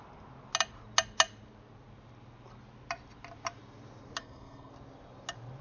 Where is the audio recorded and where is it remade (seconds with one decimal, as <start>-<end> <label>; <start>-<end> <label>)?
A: 0.0-4.2 recorded; 4.2-4.7 remade; 4.7-5.6 recorded